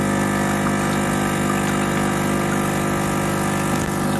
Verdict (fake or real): real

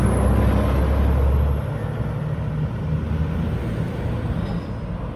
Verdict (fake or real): real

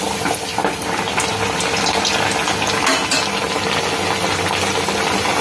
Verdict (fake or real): real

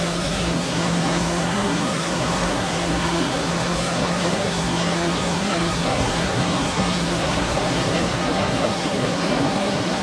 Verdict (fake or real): fake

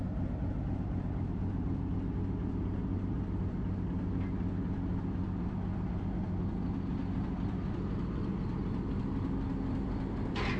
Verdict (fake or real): real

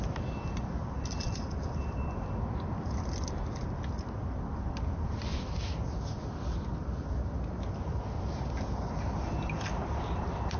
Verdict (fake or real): real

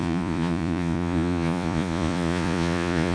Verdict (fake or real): fake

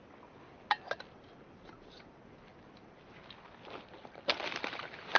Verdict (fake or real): real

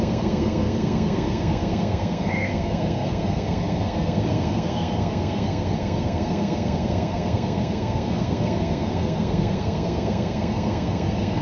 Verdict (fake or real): fake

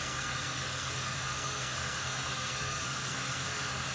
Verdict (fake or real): fake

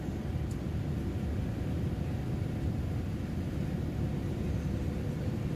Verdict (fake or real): real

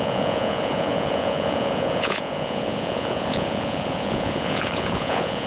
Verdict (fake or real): fake